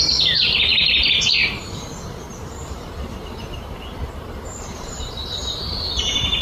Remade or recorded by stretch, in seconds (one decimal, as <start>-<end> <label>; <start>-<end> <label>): 0.0-0.7 recorded; 0.7-1.9 remade; 1.9-2.3 recorded; 2.3-6.4 remade